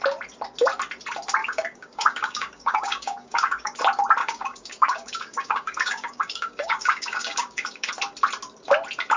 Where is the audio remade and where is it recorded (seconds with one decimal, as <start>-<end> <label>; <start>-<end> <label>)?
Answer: 0.0-1.4 recorded; 1.4-3.8 remade; 3.8-4.2 recorded; 4.2-7.9 remade; 7.9-9.2 recorded

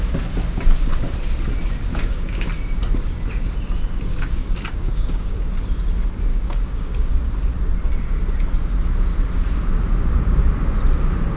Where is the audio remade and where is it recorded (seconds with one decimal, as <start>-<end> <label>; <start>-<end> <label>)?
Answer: 0.0-1.9 recorded; 1.9-2.5 remade; 2.5-4.1 recorded; 4.1-5.5 remade; 5.5-6.3 recorded; 6.3-7.1 remade; 7.1-11.4 recorded

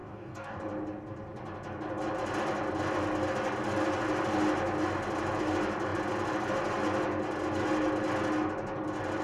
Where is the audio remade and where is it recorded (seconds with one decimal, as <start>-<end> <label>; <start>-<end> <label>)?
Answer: 0.0-0.6 remade; 0.6-9.2 recorded

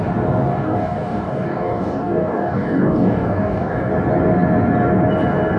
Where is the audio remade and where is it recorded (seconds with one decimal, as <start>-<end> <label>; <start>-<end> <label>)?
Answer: 0.0-0.5 recorded; 0.5-3.9 remade; 3.9-5.6 recorded

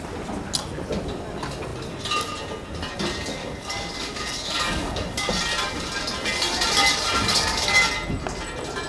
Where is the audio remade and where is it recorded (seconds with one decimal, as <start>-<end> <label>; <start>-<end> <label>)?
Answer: 0.0-3.4 recorded; 3.4-5.3 remade; 5.3-7.3 recorded; 7.3-7.9 remade; 7.9-8.9 recorded

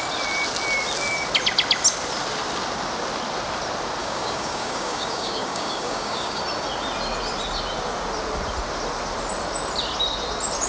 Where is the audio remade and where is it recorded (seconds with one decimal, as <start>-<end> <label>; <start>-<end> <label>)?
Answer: 0.0-4.0 recorded; 4.0-6.4 remade; 6.4-10.7 recorded

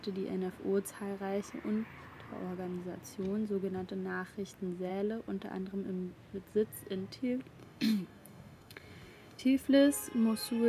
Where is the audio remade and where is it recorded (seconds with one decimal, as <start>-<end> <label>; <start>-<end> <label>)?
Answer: 0.0-7.6 recorded; 7.6-9.4 remade; 9.4-10.7 recorded